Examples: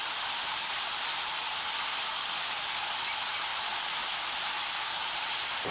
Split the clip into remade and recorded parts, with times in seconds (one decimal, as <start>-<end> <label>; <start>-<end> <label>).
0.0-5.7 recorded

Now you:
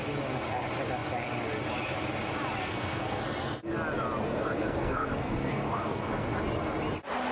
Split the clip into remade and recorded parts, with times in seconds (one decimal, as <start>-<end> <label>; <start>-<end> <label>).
0.0-2.6 recorded; 2.6-3.2 remade; 3.2-4.3 recorded; 4.3-6.4 remade; 6.4-7.3 recorded

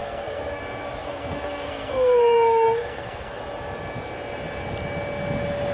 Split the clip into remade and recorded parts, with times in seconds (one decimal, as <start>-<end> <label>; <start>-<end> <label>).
0.0-0.6 remade; 0.6-1.0 recorded; 1.0-3.4 remade; 3.4-5.7 recorded